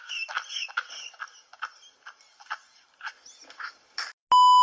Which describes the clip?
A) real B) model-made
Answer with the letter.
A